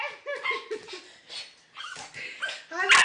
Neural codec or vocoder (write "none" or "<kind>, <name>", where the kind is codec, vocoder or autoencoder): none